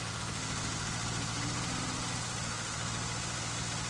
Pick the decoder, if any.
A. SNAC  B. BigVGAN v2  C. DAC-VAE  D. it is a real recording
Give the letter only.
D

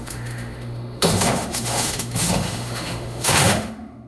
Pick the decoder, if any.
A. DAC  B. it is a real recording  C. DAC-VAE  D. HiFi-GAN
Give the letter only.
C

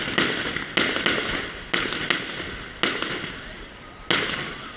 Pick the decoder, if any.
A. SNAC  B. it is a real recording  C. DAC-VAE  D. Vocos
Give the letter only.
B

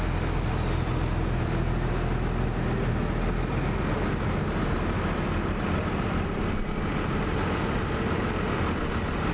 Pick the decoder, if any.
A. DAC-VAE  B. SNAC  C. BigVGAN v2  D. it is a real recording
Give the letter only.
D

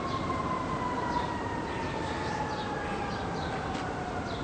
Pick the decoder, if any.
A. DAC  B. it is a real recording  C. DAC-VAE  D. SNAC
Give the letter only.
B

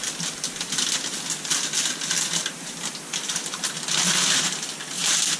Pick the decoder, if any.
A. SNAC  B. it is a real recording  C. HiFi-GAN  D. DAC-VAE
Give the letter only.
B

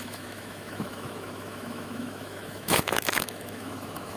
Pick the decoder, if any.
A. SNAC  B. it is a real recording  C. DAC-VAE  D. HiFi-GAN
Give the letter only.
C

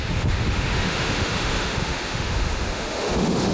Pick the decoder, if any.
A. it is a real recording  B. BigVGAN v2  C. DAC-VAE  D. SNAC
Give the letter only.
C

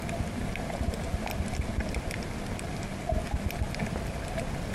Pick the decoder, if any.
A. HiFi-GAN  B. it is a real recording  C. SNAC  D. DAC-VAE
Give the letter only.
B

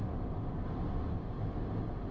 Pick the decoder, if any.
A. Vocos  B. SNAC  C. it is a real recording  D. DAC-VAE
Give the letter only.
C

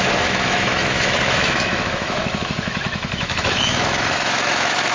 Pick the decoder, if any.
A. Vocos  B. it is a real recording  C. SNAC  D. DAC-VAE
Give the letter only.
D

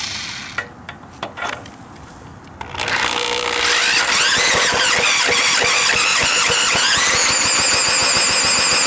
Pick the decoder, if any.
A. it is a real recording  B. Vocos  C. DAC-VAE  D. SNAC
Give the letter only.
A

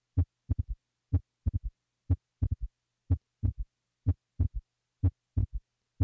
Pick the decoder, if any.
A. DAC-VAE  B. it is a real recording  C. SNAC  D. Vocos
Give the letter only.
B